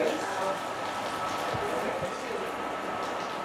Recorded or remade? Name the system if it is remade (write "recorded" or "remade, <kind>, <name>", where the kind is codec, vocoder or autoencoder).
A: recorded